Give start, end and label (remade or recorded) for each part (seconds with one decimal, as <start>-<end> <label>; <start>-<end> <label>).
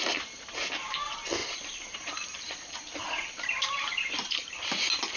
0.0-0.6 remade; 0.6-1.4 recorded; 1.4-4.5 remade; 4.5-5.2 recorded